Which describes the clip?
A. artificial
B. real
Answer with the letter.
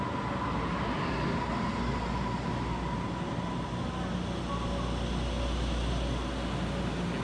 B